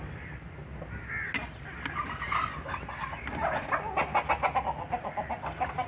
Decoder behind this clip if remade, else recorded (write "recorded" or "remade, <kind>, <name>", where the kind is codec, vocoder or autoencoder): recorded